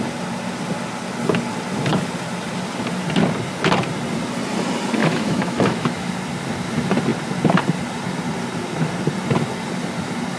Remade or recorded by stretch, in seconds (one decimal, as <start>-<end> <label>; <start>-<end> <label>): 0.0-5.0 recorded; 5.0-6.1 remade; 6.1-10.4 recorded